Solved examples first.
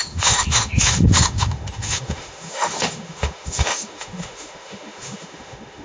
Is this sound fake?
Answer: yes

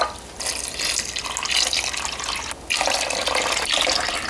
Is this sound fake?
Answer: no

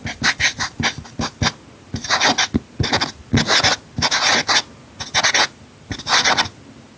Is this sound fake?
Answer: no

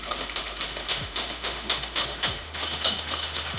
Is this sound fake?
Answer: yes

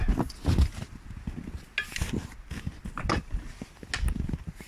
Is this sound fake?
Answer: no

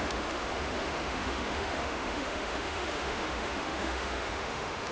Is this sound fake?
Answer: yes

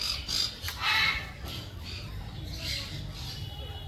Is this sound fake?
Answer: no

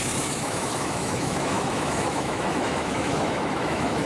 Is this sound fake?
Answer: yes